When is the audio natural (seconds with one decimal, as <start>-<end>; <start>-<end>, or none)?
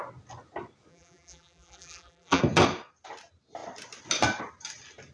0.0-0.9; 2.4-5.1